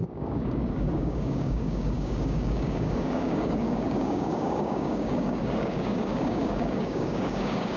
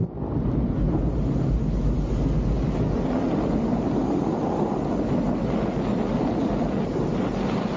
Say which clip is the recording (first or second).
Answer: second